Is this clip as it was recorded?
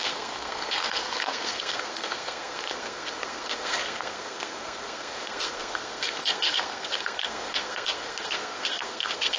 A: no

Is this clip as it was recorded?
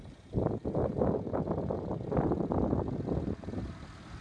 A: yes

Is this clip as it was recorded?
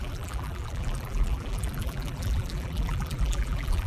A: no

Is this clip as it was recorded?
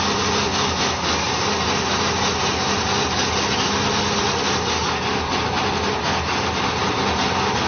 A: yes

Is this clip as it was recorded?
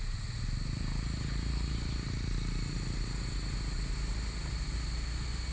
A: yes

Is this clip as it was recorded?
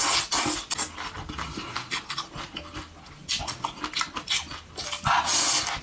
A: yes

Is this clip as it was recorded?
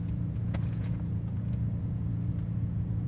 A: no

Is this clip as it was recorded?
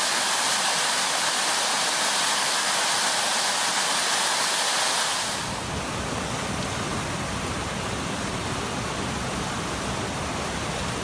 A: yes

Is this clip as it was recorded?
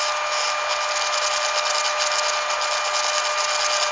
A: yes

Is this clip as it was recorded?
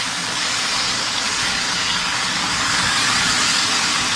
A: no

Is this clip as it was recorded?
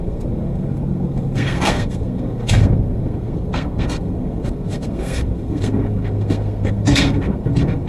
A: no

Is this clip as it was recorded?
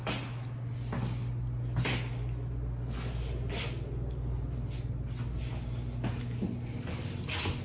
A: yes